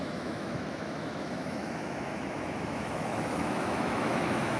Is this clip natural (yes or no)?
no